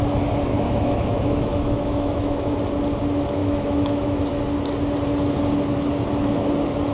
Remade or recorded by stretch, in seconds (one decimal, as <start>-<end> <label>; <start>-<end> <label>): 0.0-0.5 recorded; 0.5-2.5 remade; 2.5-3.4 recorded; 3.4-4.2 remade; 4.2-6.9 recorded